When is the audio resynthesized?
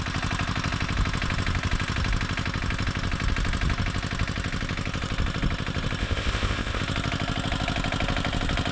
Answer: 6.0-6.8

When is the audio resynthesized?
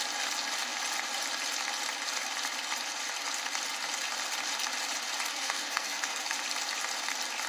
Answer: 5.3-6.4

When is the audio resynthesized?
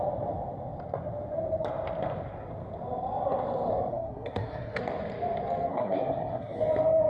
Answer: 3.9-4.8; 5.7-6.6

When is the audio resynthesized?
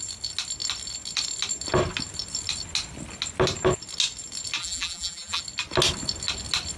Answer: 4.6-5.4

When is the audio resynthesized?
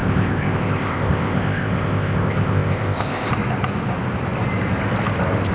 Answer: 0.0-3.3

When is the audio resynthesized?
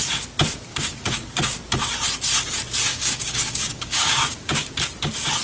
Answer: 0.7-1.6; 2.9-4.7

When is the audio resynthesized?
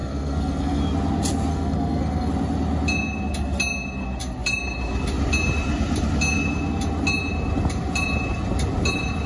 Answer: 0.0-0.8; 1.5-2.3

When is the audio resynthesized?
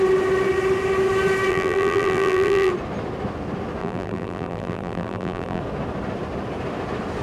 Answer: 1.5-2.7; 3.8-5.6